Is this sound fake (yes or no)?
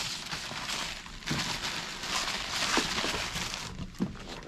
no